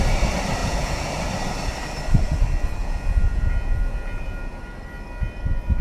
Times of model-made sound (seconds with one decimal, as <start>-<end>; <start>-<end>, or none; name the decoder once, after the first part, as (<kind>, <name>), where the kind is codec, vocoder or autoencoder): 0.6-1.1 (vocoder, Vocos); 2.8-4.6